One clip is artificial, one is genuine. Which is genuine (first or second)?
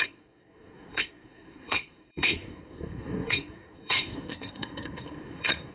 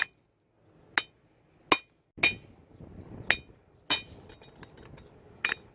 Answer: second